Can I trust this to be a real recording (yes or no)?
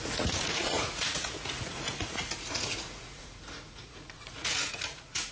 no